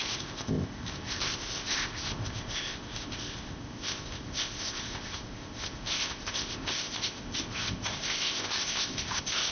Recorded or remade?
remade